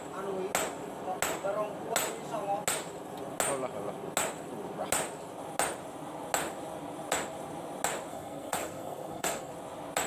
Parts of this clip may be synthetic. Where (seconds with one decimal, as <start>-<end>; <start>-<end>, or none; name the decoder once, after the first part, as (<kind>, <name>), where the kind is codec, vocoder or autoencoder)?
8.1-9.5 (codec, SNAC)